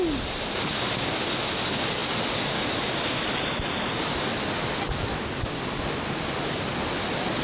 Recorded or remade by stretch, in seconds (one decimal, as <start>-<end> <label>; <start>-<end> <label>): 0.0-7.4 recorded